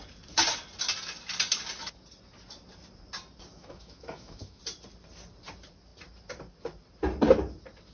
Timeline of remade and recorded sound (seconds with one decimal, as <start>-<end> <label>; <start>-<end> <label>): 0.0-3.5 recorded; 3.5-4.6 remade; 4.6-7.9 recorded